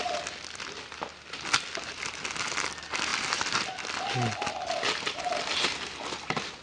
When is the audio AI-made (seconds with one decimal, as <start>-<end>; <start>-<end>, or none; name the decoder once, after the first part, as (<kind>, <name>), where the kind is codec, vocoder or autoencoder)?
none